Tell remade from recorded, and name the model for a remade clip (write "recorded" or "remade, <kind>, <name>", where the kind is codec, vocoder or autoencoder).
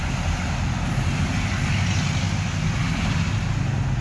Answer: recorded